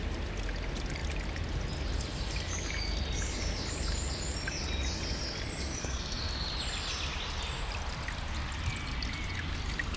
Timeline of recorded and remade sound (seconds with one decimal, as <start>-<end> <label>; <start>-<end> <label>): 0.0-5.8 recorded; 5.8-6.3 remade; 6.3-10.0 recorded

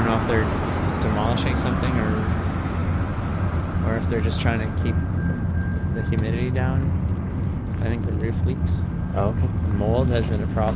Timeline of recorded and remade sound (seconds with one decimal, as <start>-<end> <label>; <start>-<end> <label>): 0.0-10.8 recorded

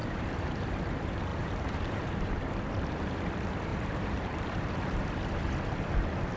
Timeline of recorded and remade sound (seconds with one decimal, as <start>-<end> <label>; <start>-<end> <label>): 0.0-0.6 remade; 0.6-1.3 recorded; 1.3-2.3 remade; 2.3-3.7 recorded; 3.7-5.0 remade; 5.0-6.4 recorded

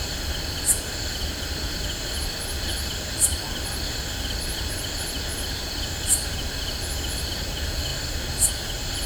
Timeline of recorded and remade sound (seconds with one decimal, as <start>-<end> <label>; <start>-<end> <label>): 0.0-9.1 recorded

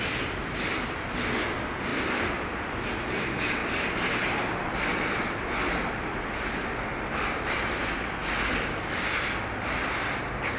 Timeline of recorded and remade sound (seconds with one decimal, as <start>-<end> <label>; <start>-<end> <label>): 0.0-1.9 recorded; 1.9-2.7 remade; 2.7-3.6 recorded; 3.6-5.7 remade; 5.7-10.6 recorded

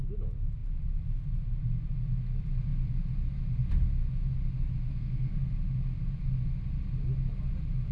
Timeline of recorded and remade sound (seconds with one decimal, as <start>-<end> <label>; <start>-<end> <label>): 0.0-4.9 recorded; 4.9-5.5 remade; 5.5-7.9 recorded

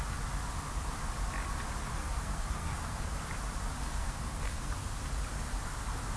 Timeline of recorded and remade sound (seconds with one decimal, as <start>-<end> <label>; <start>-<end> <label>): 0.0-2.0 recorded; 2.0-3.2 remade; 3.2-3.8 recorded; 3.8-4.7 remade; 4.7-6.2 recorded